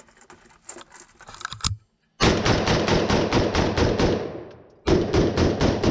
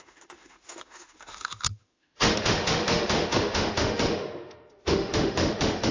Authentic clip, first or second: first